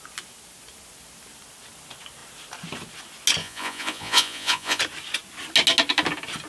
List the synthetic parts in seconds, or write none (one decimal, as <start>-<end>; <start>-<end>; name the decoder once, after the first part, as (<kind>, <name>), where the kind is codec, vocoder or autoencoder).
3.4-4.8 (vocoder, Vocos)